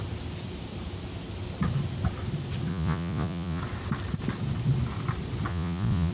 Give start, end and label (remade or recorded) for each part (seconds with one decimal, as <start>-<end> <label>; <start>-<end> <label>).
0.0-2.7 recorded; 2.7-3.6 remade; 3.6-5.5 recorded; 5.5-6.1 remade